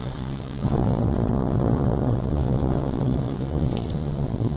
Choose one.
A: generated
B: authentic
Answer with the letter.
A